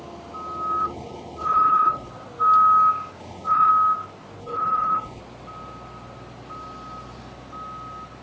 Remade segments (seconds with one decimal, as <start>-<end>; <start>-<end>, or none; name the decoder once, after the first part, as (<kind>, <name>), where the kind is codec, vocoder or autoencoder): 0.8-2.1 (codec, HILCodec); 3.2-3.7; 4.4-5.2